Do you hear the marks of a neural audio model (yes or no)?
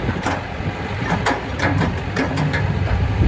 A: no